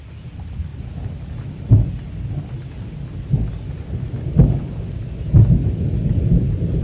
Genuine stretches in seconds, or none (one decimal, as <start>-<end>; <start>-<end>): 0.7-1.2; 1.7-5.8